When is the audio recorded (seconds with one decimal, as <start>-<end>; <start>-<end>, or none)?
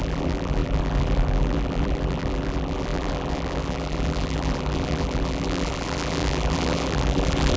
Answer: none